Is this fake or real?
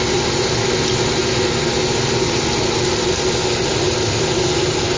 real